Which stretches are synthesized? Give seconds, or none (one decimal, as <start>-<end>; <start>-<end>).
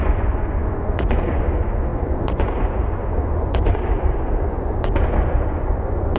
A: 0.0-6.2